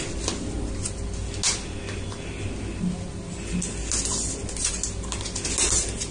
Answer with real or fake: real